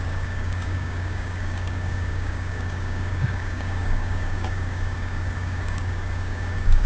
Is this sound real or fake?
fake